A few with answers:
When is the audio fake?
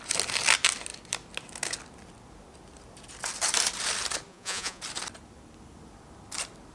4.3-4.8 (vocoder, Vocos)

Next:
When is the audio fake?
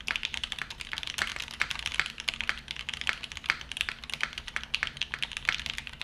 none